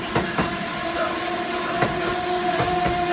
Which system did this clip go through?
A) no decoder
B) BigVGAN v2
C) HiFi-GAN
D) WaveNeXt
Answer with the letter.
A